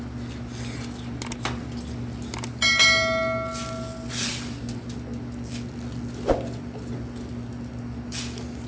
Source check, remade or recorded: recorded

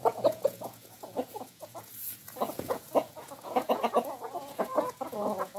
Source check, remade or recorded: remade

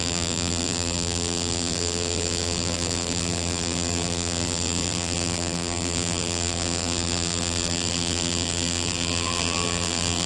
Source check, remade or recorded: remade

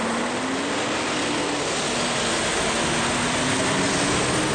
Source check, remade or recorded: recorded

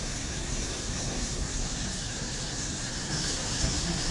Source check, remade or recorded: remade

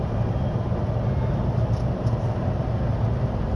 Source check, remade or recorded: recorded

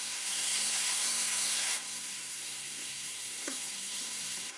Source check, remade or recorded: remade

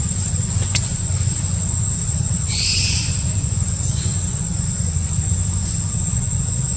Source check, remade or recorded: remade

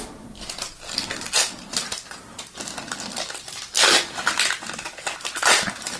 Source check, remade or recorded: recorded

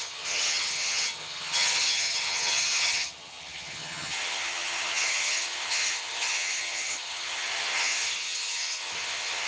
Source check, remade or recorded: remade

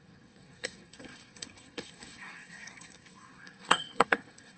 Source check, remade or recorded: remade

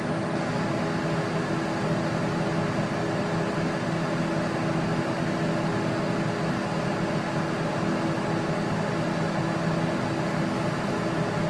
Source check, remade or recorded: recorded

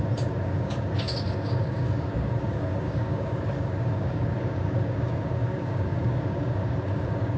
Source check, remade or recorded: remade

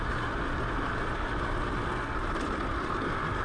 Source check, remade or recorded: recorded